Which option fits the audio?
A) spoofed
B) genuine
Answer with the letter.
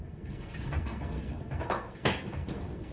A